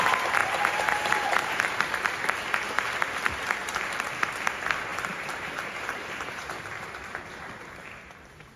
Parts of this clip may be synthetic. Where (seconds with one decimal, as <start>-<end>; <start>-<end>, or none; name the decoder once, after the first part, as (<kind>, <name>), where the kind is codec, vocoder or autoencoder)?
0.4-1.8 (vocoder, BigVGAN v2); 3.6-4.1; 4.9-6.5